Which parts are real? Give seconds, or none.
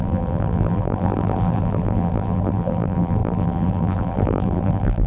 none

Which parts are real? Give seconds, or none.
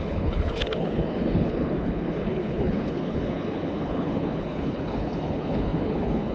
none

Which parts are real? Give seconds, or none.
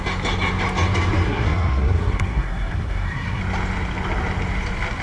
0.0-1.3; 3.4-5.0